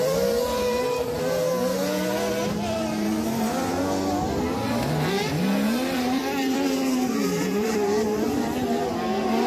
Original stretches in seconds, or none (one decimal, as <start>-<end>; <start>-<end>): 0.0-6.2